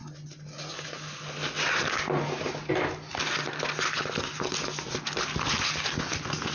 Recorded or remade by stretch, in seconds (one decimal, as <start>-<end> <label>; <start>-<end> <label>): 0.0-6.5 recorded